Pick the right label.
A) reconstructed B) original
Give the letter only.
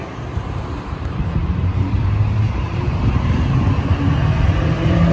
A